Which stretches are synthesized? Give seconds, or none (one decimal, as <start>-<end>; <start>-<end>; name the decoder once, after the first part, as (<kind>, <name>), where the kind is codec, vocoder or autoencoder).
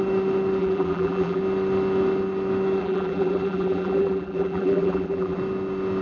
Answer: 0.6-1.4 (vocoder, BigVGAN v2); 2.8-5.4